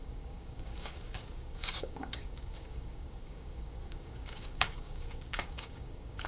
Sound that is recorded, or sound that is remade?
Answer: remade